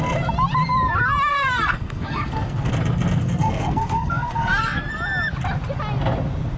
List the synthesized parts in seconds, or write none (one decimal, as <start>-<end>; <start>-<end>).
1.3-2.7; 3.2-4.9